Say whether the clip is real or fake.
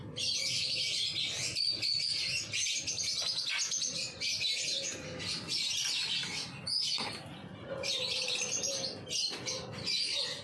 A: real